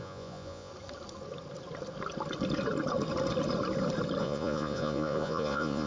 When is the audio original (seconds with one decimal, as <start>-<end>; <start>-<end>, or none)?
0.7-4.2